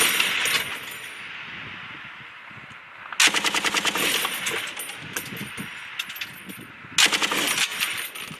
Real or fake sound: real